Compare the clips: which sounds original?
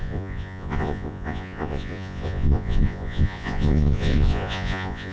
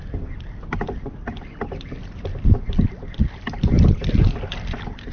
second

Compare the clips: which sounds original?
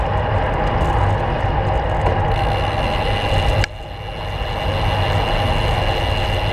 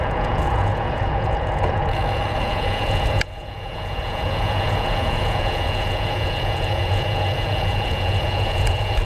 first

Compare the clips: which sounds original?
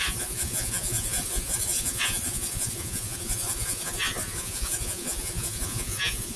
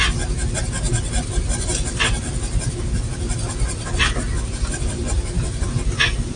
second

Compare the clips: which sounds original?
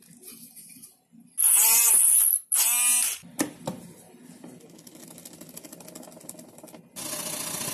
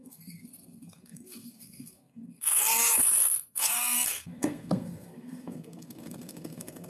first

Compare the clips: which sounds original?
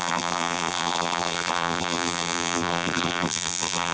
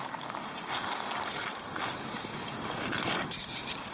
second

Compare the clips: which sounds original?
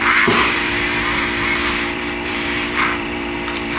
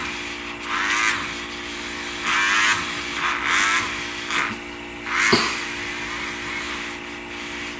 second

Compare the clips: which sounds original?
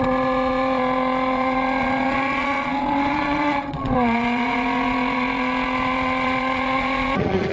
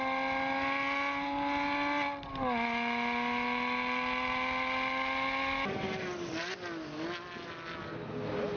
second